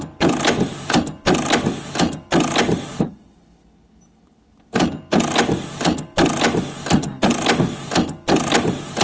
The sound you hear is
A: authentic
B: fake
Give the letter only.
A